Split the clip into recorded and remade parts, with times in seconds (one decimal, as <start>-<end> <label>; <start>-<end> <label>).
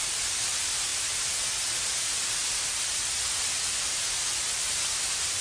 0.0-5.4 recorded